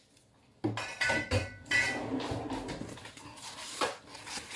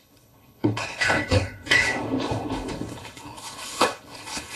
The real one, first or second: first